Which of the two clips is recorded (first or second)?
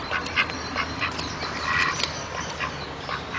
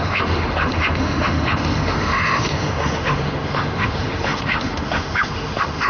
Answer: first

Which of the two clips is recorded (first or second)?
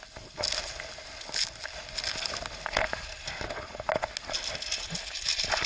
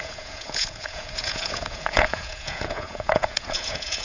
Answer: first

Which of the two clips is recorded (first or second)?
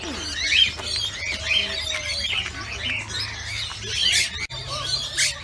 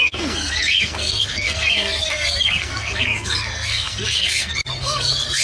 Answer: first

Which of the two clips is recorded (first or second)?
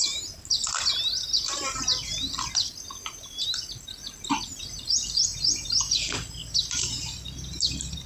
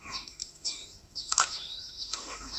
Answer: first